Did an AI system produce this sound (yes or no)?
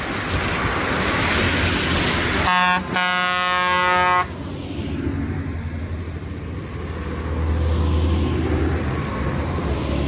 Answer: no